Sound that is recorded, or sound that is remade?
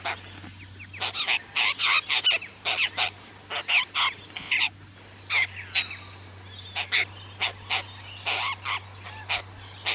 recorded